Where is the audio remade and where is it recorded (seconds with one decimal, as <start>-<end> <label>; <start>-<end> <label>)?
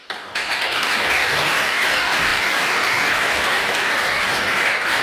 0.0-5.0 remade